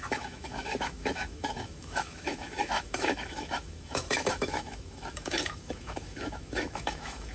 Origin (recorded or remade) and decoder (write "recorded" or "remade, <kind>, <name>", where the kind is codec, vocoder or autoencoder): remade, autoencoder, DAC-VAE